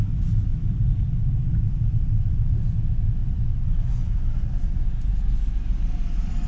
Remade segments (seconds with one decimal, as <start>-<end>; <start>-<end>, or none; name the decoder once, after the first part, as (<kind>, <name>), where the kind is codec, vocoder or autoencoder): 0.5-1.1 (vocoder, BigVGAN v2)